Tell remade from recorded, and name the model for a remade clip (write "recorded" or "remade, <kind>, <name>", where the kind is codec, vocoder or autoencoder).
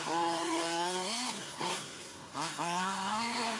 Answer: remade, codec, SNAC